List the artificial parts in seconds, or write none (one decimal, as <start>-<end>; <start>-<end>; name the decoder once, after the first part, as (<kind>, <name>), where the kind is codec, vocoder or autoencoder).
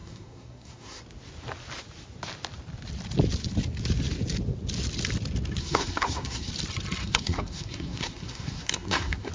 0.0-1.0 (codec, SNAC); 5.6-6.5; 7.0-9.3